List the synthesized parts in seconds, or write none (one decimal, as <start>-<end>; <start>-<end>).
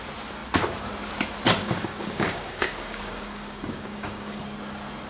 1.6-4.4